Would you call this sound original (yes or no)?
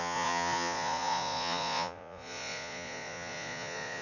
no